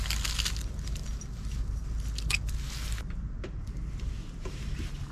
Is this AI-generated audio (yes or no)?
no